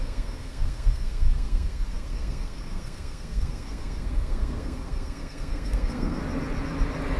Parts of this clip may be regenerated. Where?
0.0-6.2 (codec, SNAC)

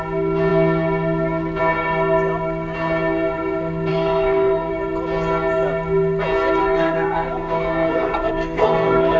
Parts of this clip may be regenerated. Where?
3.9-4.7 (codec, SNAC); 6.6-9.2

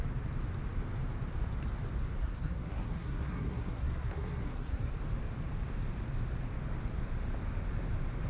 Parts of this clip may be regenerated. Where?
2.2-4.9 (codec, SNAC)

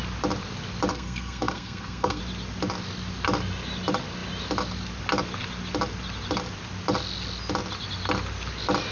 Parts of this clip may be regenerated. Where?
0.9-2.2 (codec, SNAC)

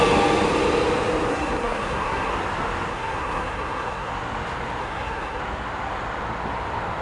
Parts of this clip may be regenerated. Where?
1.3-2.3 (codec, SNAC); 2.9-4.1; 4.8-5.4

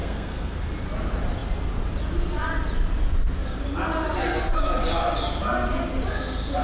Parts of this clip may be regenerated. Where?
0.0-0.6 (codec, SNAC)